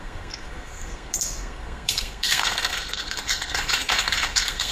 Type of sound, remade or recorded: remade